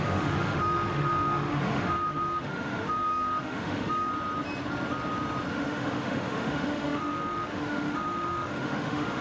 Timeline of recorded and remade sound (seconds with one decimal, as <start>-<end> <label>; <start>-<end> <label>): 0.0-4.1 remade; 4.1-5.5 recorded; 5.5-9.2 remade